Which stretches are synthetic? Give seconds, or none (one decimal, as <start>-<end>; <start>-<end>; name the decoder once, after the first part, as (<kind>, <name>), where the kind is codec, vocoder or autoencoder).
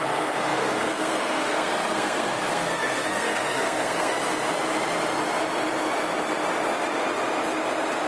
0.0-4.1 (codec, SNAC)